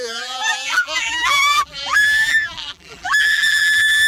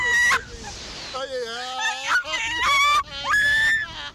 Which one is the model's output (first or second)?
first